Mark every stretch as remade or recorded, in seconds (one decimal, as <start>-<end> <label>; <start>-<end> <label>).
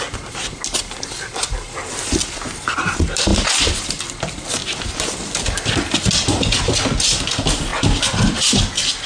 0.0-9.1 recorded